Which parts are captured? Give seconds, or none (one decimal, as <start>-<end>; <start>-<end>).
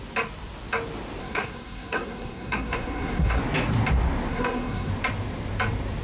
0.0-1.2; 3.4-4.3; 4.9-6.0